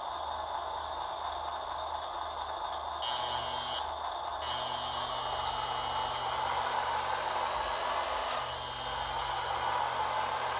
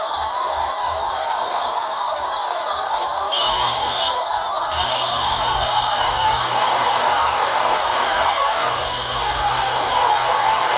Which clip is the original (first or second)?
first